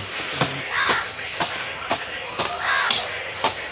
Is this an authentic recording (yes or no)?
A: yes